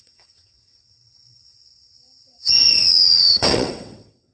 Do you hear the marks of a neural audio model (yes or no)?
yes